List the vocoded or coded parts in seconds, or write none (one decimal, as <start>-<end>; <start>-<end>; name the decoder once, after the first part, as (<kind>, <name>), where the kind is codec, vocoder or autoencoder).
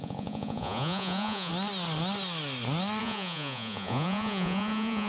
0.0-1.5 (vocoder, Vocos); 3.0-5.1